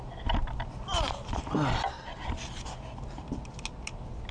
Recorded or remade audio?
recorded